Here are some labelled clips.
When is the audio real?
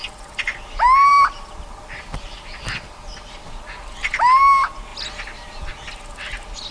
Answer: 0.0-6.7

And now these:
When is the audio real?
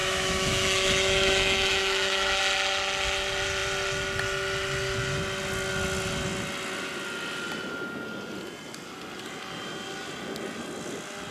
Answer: 2.4-11.3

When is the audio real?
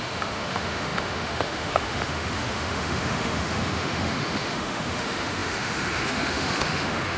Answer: none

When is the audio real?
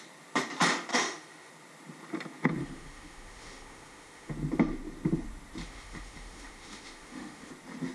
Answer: 0.0-0.9; 1.5-2.6; 4.3-5.6; 7.5-7.9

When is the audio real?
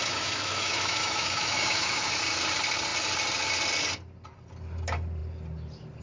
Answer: 2.2-6.0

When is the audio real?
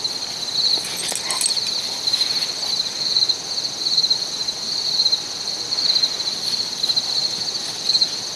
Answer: 0.0-8.4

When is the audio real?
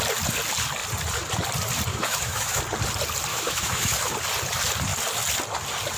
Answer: 0.0-1.9; 2.6-3.3; 4.1-6.0